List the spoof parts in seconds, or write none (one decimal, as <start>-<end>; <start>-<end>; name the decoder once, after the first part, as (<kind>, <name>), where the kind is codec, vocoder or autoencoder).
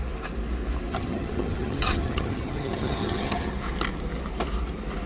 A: 0.9-3.5 (vocoder, HiFi-GAN)